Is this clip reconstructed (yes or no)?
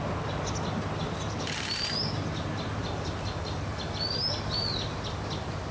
no